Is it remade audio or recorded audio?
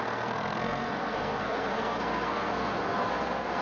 remade